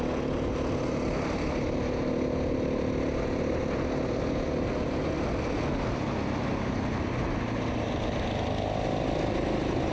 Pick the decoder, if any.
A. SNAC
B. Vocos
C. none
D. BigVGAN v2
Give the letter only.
C